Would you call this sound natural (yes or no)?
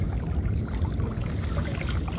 yes